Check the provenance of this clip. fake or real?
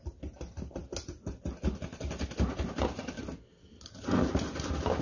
real